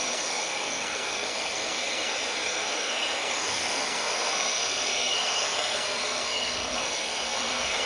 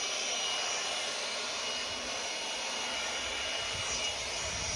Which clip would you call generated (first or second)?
first